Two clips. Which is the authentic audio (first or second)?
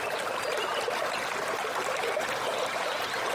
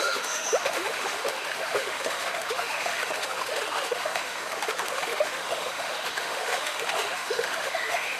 first